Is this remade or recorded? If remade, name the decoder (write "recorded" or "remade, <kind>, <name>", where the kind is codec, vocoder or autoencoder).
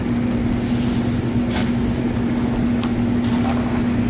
recorded